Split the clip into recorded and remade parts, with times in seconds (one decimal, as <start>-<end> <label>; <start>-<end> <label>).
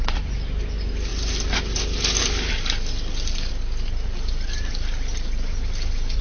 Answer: 0.0-6.2 recorded